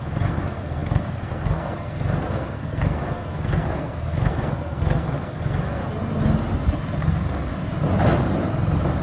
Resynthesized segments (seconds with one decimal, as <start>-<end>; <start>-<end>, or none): 0.0-5.8; 7.0-7.5